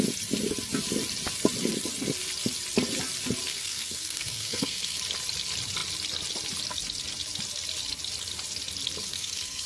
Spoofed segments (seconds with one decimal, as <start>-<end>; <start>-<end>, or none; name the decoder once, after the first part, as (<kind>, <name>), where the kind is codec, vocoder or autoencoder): 3.5-5.0 (codec, SNAC); 9.0-9.7

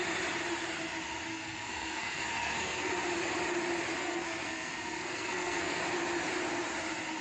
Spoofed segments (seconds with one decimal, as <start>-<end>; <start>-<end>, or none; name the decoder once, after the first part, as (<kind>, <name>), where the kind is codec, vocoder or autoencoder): 1.3-2.9 (codec, SNAC); 4.0-5.8

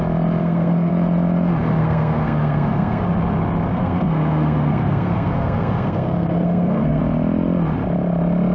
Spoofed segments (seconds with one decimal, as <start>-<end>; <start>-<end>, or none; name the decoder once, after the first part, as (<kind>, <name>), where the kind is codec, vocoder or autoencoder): 0.4-0.9 (codec, SNAC); 1.8-3.0; 3.7-7.0

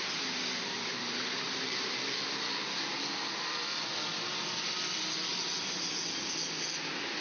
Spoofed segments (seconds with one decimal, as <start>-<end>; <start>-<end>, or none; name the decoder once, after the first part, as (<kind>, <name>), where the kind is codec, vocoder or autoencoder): none

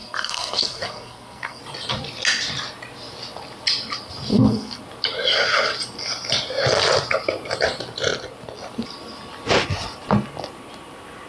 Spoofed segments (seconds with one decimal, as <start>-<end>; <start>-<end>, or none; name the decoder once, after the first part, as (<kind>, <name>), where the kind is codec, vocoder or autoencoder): 0.0-1.6 (codec, SNAC); 4.3-4.8

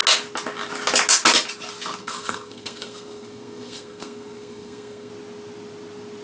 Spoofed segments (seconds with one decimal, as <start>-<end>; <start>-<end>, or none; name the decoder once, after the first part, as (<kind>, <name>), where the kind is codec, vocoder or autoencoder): 2.0-5.1 (codec, SNAC)